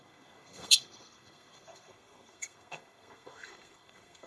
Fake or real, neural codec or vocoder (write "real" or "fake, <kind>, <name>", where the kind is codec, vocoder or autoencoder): fake, codec, SNAC